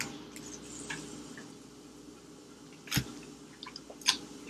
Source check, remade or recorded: recorded